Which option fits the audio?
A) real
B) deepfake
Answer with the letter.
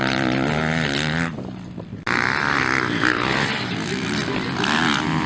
A